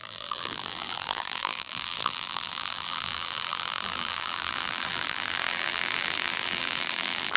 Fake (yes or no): yes